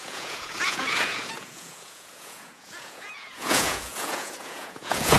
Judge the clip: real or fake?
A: fake